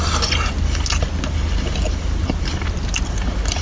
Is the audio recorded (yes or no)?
yes